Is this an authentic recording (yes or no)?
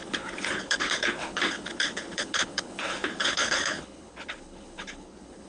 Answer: no